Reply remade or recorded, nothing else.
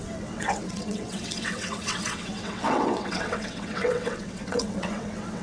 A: remade